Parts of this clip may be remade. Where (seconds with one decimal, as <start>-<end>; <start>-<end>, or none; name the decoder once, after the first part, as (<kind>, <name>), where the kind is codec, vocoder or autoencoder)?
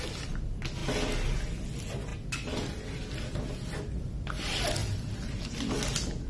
4.8-5.8 (vocoder, BigVGAN v2)